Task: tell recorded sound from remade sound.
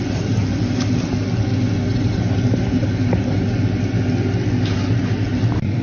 recorded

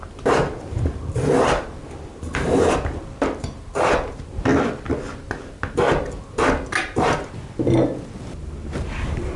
recorded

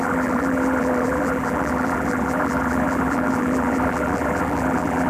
remade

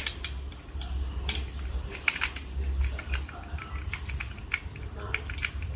recorded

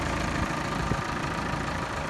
remade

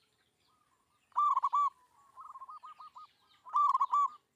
recorded